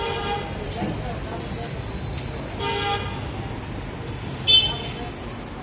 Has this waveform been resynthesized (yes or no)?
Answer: no